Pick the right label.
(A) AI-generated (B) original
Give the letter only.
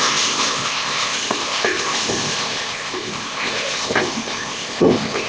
A